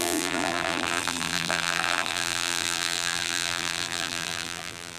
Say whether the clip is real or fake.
fake